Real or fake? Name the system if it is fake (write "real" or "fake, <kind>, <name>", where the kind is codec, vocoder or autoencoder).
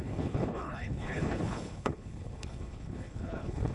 fake, codec, HILCodec